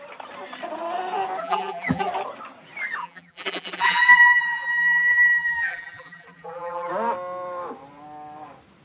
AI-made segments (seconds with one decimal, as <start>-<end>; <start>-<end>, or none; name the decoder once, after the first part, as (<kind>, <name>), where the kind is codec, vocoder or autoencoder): 1.4-2.1 (vocoder, BigVGAN v2); 3.0-6.9